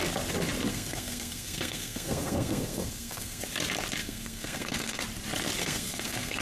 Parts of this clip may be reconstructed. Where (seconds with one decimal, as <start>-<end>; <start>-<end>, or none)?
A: 0.7-3.4; 4.0-5.0; 5.6-6.4

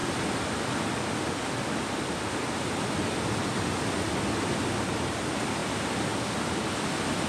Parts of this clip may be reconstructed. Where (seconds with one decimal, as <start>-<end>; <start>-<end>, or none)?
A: none

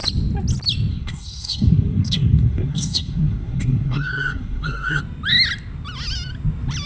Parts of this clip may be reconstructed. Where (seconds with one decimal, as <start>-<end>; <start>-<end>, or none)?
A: 0.9-5.0

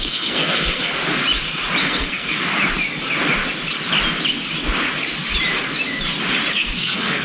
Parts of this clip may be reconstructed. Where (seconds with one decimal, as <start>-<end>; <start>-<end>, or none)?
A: 0.0-1.0; 1.8-2.5; 6.5-7.2

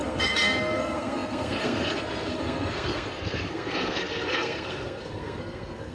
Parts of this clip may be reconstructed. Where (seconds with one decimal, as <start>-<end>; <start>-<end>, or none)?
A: 0.0-5.9